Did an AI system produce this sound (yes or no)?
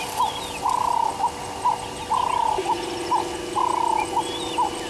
no